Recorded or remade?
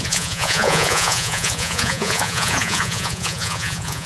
remade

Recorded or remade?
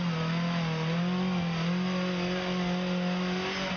recorded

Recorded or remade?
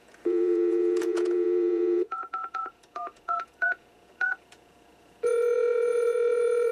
remade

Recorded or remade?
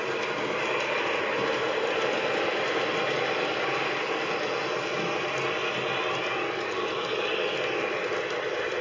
recorded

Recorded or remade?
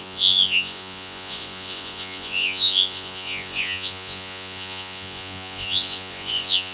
remade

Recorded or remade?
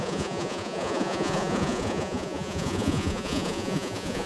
remade